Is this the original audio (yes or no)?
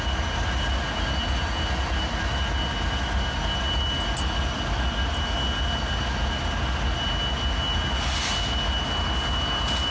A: yes